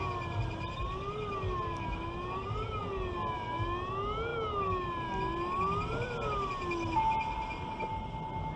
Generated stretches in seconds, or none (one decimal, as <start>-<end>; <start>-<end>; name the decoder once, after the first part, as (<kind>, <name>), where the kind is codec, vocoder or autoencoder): none